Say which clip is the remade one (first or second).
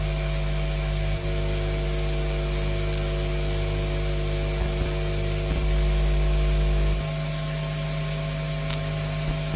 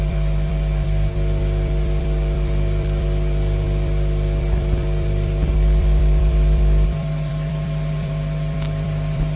second